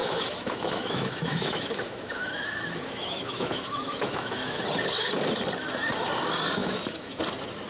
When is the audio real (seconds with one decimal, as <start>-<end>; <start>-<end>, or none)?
4.6-6.6; 7.2-7.7